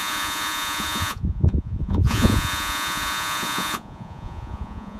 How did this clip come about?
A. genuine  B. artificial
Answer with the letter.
B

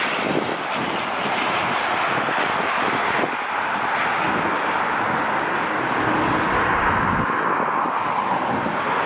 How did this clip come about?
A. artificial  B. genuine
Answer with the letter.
B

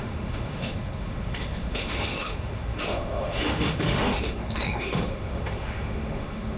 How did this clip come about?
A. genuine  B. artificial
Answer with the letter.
B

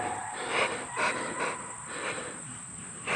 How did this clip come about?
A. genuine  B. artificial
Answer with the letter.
B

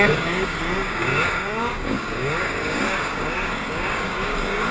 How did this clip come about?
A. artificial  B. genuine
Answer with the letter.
A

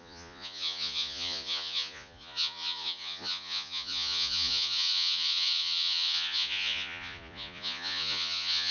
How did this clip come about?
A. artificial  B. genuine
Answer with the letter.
A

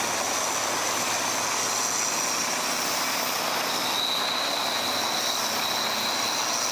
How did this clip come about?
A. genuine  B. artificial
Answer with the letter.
A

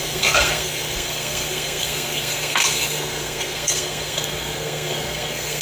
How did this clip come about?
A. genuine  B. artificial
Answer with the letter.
B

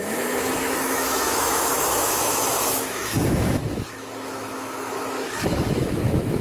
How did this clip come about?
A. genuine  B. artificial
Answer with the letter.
B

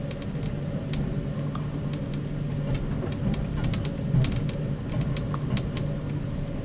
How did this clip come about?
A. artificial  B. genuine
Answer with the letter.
B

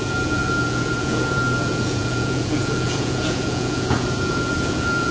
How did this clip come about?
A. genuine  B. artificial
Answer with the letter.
B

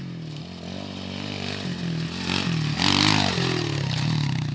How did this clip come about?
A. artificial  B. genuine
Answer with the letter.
B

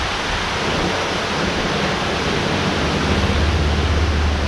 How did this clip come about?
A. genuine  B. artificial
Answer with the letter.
A